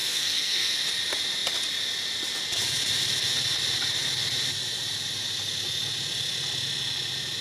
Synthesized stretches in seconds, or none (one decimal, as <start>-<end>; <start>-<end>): 0.0-0.7

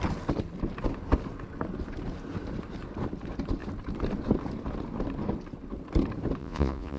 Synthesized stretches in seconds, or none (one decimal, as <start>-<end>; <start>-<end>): 6.4-7.0

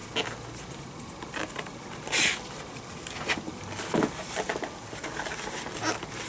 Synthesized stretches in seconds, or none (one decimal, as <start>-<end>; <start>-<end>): none

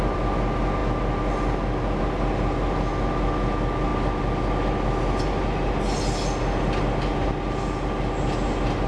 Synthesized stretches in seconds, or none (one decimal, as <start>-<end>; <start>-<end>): none